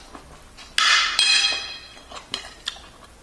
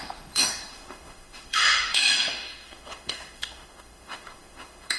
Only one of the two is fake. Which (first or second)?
second